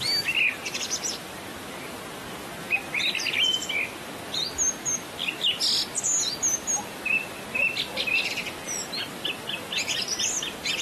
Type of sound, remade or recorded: recorded